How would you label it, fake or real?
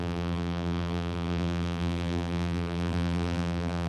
fake